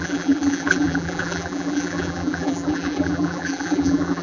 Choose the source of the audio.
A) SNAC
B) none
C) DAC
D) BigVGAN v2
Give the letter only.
D